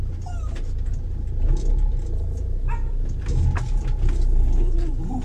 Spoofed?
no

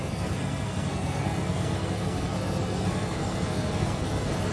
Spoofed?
yes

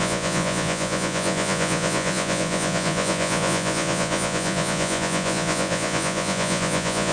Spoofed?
yes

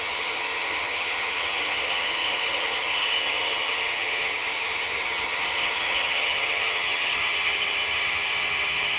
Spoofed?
yes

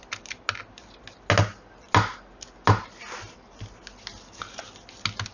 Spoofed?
no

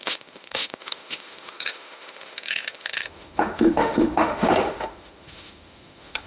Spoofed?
yes